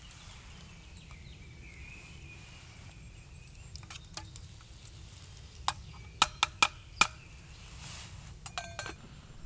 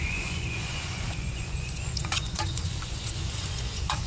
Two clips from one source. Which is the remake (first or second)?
second